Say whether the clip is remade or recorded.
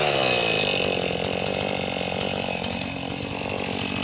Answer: recorded